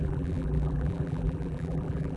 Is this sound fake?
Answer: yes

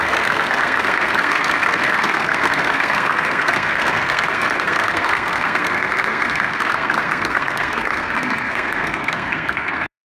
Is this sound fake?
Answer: yes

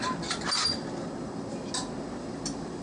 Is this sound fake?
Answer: no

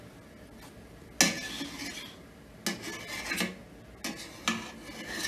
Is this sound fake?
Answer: no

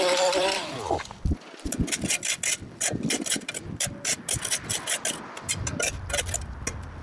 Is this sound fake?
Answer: no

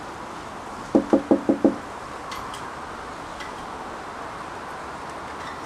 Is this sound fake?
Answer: no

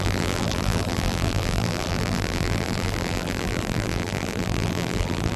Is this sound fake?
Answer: yes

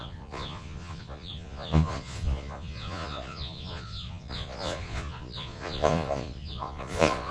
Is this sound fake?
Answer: yes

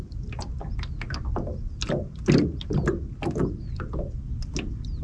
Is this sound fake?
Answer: no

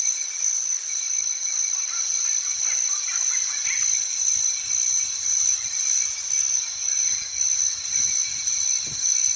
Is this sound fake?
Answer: no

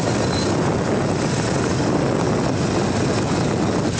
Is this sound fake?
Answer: no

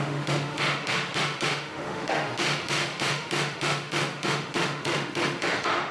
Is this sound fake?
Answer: yes